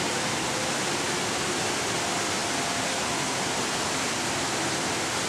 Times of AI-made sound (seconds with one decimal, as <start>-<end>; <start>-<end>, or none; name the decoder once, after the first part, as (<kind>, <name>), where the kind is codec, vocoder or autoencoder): none